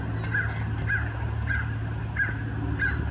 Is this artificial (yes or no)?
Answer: no